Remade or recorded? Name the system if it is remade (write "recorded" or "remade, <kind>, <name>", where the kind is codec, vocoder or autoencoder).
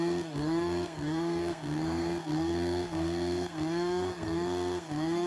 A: remade, codec, SNAC